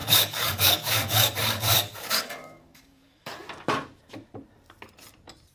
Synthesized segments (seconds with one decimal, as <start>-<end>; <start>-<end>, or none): 0.0-3.3

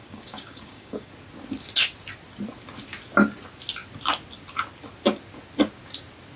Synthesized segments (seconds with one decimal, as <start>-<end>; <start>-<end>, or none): 0.0-1.1

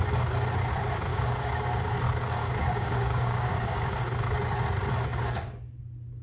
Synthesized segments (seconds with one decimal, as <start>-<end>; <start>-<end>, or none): 1.1-1.8; 2.4-4.0

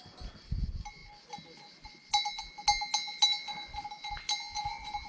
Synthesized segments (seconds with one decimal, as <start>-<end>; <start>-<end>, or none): none

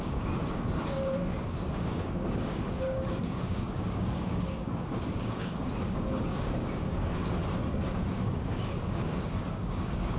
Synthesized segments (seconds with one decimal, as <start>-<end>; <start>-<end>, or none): 0.0-7.4; 8.1-10.2

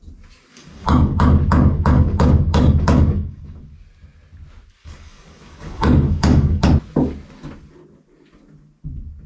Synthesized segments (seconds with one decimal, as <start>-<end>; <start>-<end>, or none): 0.5-3.6; 4.8-6.7

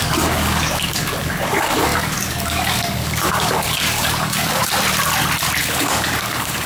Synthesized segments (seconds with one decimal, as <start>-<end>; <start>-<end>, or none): 0.0-4.6; 5.6-6.7

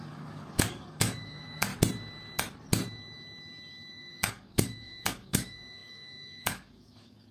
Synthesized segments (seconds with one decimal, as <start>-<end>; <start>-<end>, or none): 0.0-1.7; 3.9-7.3